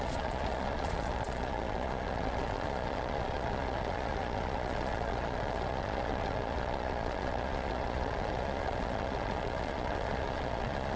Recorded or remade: remade